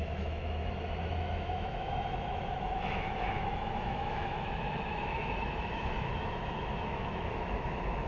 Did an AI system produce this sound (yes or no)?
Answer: yes